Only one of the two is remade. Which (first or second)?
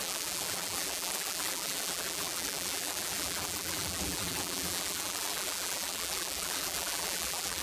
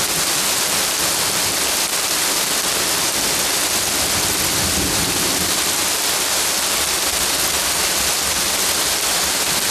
first